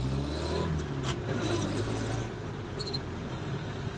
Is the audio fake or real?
real